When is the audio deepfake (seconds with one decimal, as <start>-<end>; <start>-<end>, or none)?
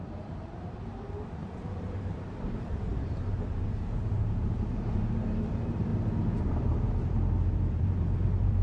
0.0-5.9; 6.4-8.6